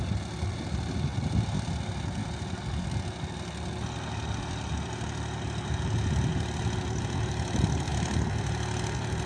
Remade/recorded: recorded